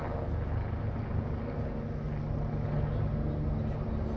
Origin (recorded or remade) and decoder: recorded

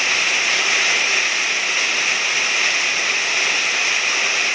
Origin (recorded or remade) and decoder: recorded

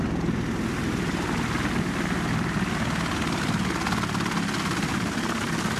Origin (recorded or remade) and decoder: recorded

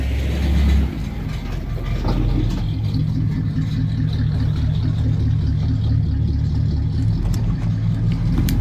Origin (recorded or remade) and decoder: recorded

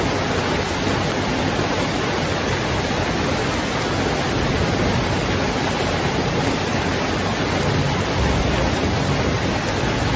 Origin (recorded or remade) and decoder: recorded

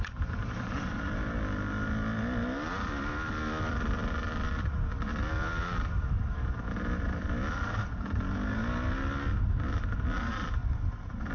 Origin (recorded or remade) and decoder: recorded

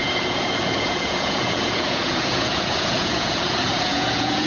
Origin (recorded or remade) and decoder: remade, vocoder, Vocos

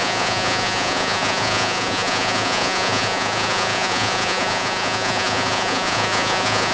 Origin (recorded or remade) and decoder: remade, vocoder, Vocos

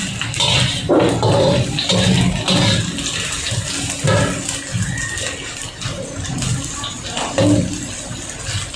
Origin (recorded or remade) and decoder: recorded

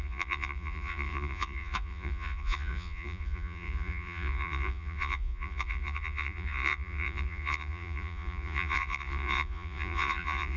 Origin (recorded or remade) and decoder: remade, vocoder, Vocos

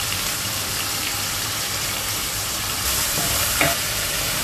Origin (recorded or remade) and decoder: remade, vocoder, BigVGAN v2